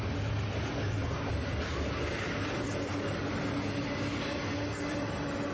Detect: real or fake real